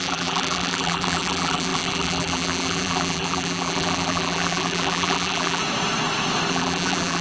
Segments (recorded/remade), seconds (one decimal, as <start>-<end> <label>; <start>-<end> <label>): 0.0-5.6 remade; 5.6-6.5 recorded; 6.5-7.2 remade